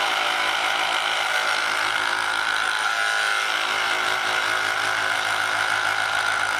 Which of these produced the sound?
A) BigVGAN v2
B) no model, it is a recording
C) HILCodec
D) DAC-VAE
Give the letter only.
A